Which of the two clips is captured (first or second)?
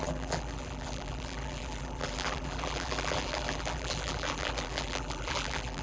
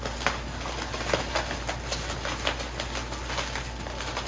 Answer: second